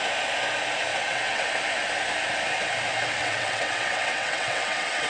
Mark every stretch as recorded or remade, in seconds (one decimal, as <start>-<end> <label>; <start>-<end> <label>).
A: 0.0-0.9 recorded; 0.9-1.5 remade; 1.5-3.2 recorded; 3.2-5.1 remade